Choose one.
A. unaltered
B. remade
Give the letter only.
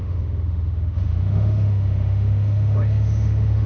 B